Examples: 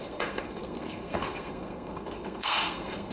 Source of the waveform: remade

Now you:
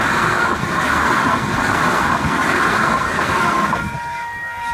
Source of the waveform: remade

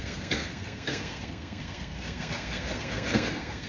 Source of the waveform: remade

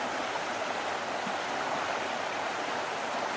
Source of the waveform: recorded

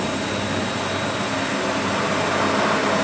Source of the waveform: recorded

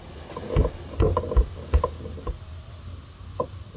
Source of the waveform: recorded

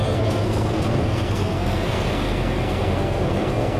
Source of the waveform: remade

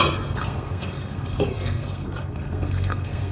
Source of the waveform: remade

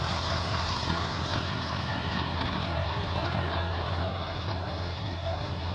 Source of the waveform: remade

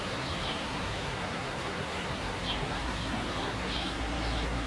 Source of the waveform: remade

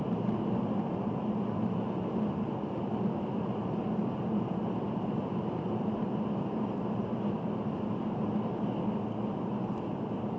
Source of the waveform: recorded